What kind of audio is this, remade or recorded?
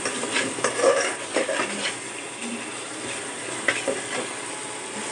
recorded